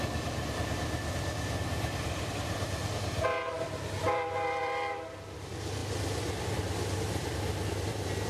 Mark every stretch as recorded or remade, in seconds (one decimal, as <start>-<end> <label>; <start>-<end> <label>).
0.0-5.8 remade; 5.8-6.4 recorded; 6.4-8.3 remade